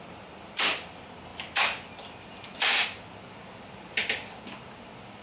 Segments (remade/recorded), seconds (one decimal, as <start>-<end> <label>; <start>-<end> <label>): 0.0-5.2 recorded